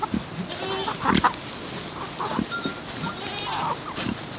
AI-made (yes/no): no